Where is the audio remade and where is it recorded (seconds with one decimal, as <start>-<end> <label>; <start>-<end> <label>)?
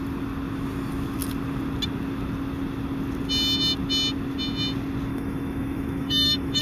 0.0-5.1 recorded; 5.1-6.6 remade